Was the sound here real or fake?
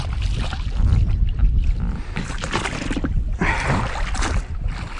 real